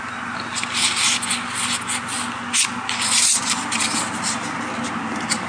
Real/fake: real